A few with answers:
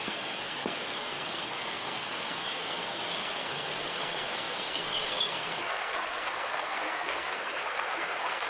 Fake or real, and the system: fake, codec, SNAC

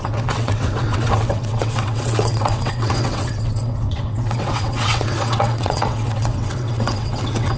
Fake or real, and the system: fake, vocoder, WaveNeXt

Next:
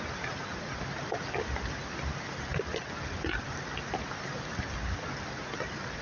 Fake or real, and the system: real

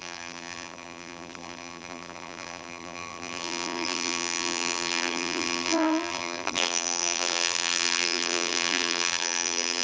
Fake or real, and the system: fake, vocoder, BigVGAN v2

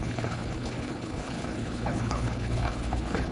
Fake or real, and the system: fake, codec, HILCodec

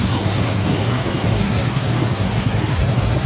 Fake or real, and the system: fake, codec, SNAC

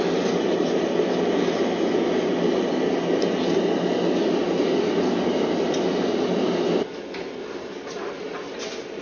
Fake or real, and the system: real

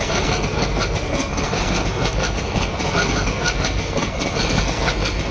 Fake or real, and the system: fake, codec, SNAC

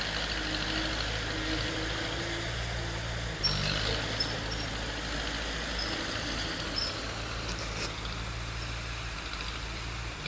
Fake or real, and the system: real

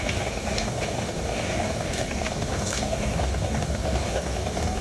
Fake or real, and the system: fake, codec, DAC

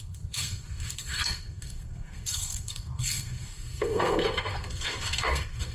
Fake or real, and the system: fake, codec, SNAC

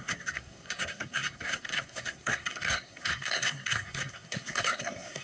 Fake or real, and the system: fake, codec, SNAC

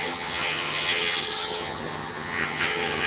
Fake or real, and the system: fake, vocoder, HiFi-GAN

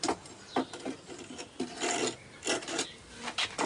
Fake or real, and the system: real